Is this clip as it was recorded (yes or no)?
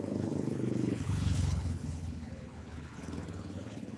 no